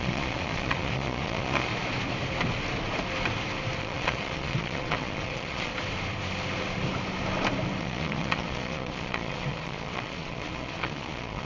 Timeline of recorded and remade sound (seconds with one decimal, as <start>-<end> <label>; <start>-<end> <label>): 0.0-1.7 remade; 1.7-3.8 recorded; 3.8-5.7 remade; 5.7-7.8 recorded; 7.8-11.5 remade